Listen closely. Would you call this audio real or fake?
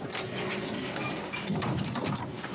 real